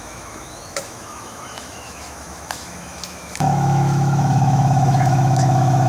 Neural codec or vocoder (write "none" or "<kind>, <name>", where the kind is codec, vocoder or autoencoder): autoencoder, DAC-VAE